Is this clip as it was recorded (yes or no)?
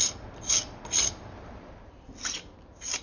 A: yes